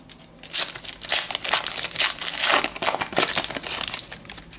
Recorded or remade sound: recorded